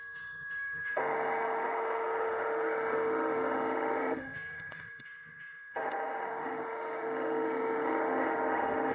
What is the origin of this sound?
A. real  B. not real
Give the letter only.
B